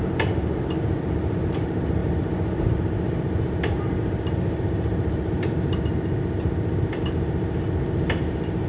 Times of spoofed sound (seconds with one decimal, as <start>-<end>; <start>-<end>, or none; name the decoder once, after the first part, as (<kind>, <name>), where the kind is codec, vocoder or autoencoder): none